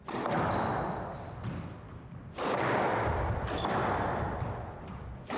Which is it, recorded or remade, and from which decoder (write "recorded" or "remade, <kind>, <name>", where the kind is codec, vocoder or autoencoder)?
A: remade, vocoder, BigVGAN v2